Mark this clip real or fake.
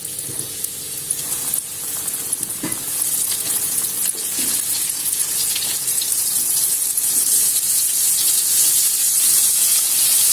fake